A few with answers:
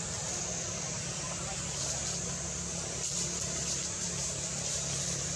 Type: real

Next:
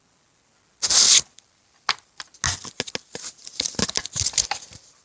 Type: real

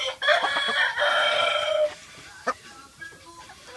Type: real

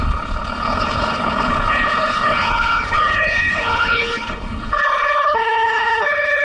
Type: fake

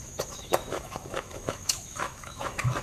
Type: fake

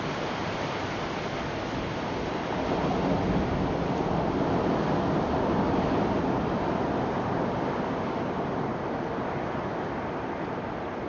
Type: real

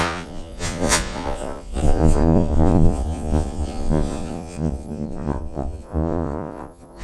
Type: fake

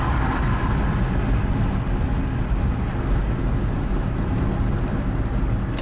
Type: real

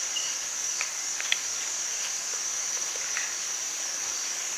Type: fake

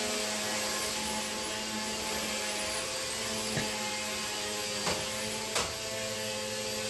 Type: real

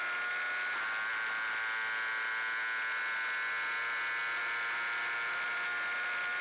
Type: real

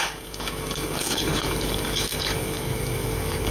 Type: fake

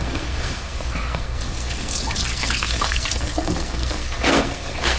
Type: fake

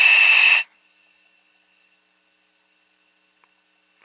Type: real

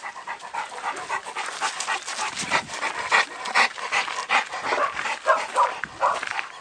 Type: real